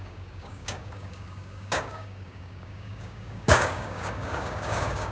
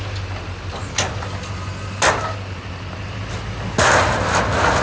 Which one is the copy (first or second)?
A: first